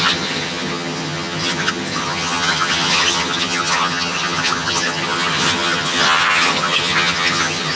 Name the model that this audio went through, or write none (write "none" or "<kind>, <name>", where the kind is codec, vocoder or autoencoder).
vocoder, HiFi-GAN